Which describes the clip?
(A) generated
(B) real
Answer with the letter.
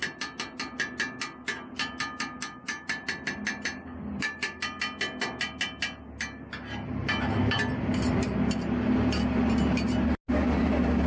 B